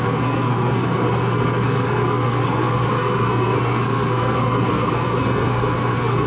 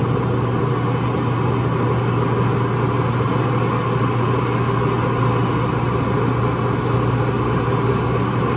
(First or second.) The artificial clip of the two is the first